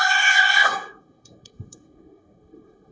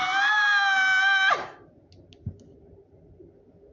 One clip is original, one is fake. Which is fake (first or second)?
first